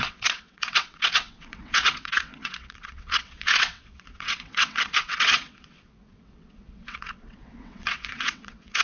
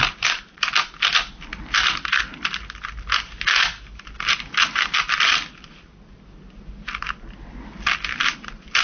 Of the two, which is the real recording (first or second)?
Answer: second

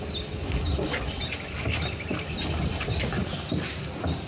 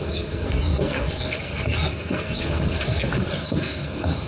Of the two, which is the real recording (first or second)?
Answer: first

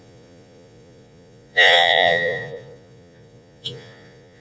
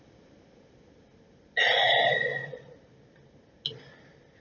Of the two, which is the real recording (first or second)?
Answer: second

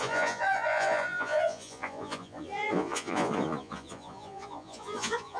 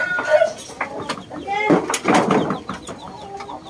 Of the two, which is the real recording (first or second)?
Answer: second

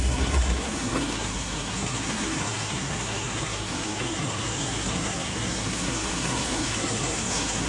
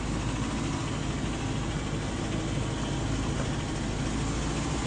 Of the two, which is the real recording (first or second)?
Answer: second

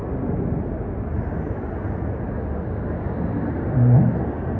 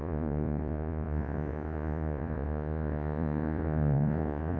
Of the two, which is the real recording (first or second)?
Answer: first